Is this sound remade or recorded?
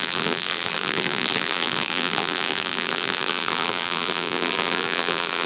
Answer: remade